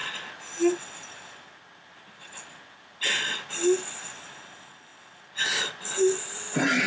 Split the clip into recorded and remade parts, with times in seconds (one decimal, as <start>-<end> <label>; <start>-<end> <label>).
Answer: 0.0-6.9 recorded